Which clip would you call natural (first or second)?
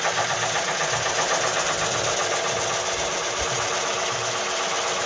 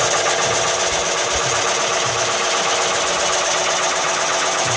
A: second